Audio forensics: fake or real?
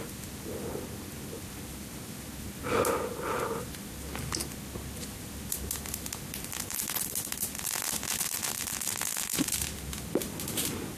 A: real